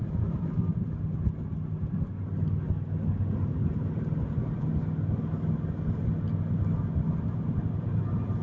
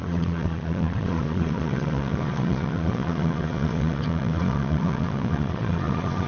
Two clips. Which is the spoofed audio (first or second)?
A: second